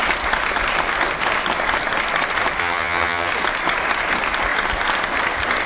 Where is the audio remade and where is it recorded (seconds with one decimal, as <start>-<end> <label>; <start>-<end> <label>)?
0.0-2.6 recorded; 2.6-3.3 remade; 3.3-5.7 recorded